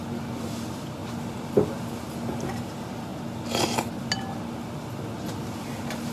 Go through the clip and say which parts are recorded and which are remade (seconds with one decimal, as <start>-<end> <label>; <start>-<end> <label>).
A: 0.0-6.1 recorded